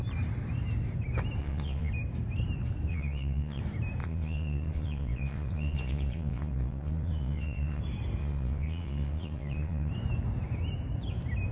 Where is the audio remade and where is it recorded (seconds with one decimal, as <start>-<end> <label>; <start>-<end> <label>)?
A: 0.0-1.4 recorded; 1.4-1.9 remade; 1.9-2.9 recorded; 2.9-3.6 remade; 3.6-4.0 recorded; 4.0-7.8 remade; 7.8-8.2 recorded; 8.2-9.9 remade; 9.9-11.5 recorded